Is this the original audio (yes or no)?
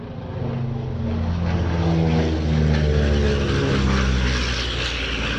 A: yes